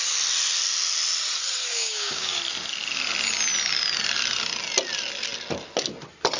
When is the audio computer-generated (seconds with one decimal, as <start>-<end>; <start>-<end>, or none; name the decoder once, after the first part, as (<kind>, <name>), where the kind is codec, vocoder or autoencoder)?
1.7-2.4 (codec, DAC)